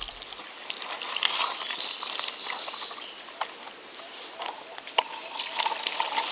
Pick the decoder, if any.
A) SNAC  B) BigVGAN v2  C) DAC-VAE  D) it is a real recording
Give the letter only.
D